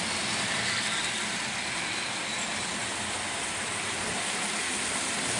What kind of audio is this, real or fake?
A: real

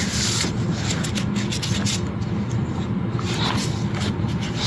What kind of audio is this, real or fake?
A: real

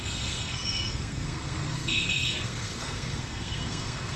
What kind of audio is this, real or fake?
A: fake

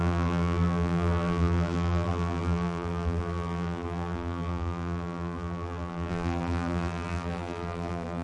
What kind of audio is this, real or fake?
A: fake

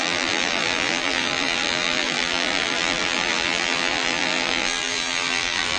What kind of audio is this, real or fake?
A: fake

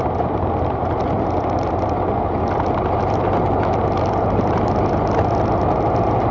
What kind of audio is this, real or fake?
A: real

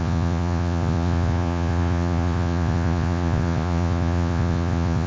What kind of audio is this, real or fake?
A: fake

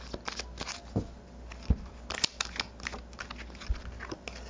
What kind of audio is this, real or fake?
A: real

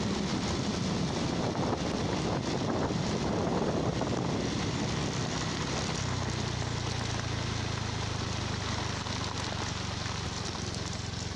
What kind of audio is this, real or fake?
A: real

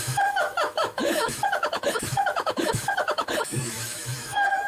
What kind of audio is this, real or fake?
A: fake